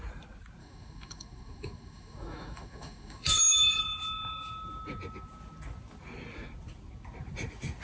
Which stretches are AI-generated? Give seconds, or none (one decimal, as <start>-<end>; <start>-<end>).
0.6-3.8